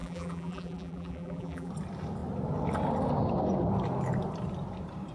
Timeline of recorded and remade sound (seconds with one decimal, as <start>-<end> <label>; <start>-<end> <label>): 0.0-1.7 remade; 1.7-5.1 recorded